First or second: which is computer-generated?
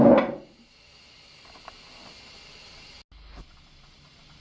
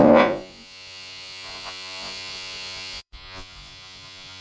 second